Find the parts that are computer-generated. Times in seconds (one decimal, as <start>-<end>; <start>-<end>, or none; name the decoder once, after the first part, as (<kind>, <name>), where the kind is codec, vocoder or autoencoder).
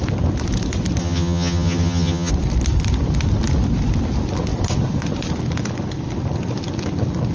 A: 1.0-2.3 (vocoder, HiFi-GAN)